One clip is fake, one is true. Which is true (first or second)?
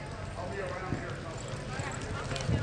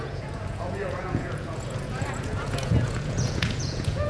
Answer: first